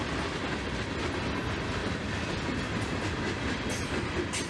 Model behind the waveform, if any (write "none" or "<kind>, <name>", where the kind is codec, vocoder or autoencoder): none